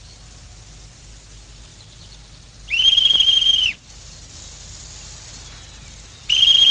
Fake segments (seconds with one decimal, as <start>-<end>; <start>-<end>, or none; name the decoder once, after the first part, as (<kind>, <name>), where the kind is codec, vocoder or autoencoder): none